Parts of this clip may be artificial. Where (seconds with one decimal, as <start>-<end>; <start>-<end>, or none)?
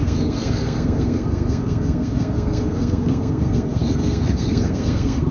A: 0.0-5.3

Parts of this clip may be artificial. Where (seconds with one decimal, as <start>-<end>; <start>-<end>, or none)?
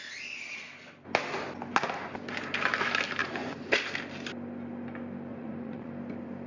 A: 3.2-3.7; 5.3-5.9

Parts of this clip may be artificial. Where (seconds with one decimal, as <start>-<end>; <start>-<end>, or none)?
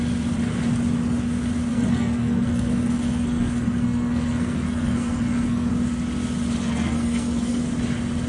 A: 1.7-5.7; 6.6-7.6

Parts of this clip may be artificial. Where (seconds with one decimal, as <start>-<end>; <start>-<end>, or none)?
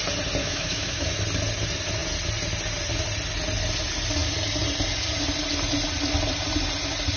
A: 0.4-1.2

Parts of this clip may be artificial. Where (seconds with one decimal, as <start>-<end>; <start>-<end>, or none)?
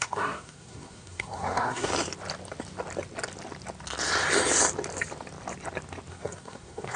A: 0.0-1.9; 6.1-7.0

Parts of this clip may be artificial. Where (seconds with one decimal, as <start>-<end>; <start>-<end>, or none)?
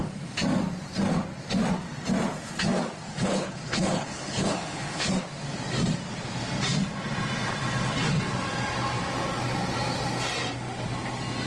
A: 3.1-5.1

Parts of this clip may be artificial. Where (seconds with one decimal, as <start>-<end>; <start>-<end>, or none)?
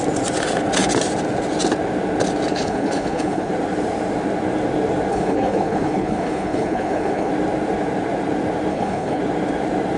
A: 2.5-3.5; 5.1-7.3; 8.7-9.2